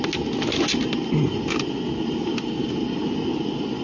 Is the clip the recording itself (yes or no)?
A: yes